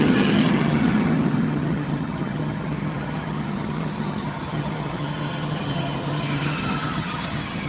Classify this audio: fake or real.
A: fake